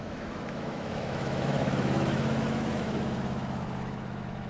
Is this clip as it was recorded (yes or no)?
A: no